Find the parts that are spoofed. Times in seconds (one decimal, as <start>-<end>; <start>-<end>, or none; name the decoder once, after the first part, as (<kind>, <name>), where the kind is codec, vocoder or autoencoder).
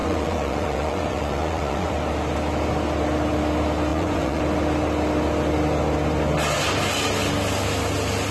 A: 0.0-1.9 (vocoder, Vocos); 3.9-4.4